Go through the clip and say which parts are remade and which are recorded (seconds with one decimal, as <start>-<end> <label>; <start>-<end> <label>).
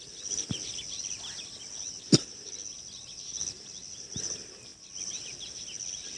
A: 0.0-6.2 recorded